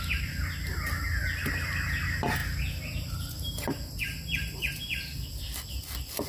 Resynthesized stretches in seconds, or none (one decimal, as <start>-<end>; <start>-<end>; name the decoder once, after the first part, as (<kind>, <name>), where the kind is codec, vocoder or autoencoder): none

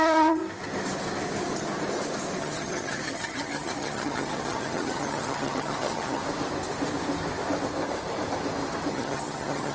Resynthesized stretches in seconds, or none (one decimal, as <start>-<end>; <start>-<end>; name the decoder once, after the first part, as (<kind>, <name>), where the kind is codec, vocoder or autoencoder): 0.0-0.4 (vocoder, HiFi-GAN); 2.4-6.2; 8.9-9.7

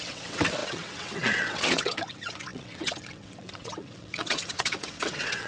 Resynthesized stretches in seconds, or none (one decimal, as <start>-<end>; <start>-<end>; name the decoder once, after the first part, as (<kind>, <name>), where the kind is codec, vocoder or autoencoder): 0.0-5.5 (vocoder, WaveNeXt)

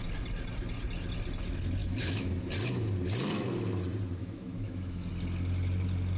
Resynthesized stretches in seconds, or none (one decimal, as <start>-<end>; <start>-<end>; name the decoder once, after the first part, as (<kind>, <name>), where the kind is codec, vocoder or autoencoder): 1.8-2.3 (autoencoder, DAC-VAE); 4.2-5.1

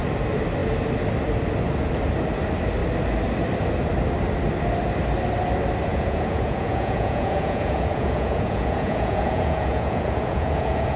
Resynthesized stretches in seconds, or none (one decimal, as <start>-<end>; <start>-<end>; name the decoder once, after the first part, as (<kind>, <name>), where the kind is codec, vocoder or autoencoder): 5.9-11.0 (vocoder, Vocos)

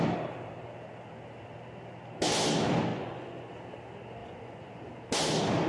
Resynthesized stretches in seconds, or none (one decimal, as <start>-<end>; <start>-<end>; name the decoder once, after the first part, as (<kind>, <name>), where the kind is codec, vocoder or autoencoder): 2.9-3.5 (vocoder, Vocos); 4.2-4.8

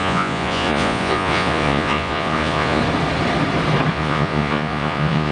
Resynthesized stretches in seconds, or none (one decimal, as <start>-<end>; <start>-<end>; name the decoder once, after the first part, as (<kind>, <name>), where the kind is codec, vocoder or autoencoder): 0.0-2.8 (vocoder, Vocos); 3.9-5.3

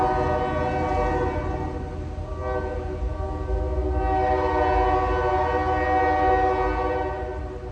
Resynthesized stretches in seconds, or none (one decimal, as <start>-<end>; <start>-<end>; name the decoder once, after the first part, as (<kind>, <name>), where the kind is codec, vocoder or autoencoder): none